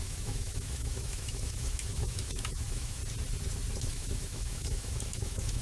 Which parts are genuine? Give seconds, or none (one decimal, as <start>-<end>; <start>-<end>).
3.0-3.8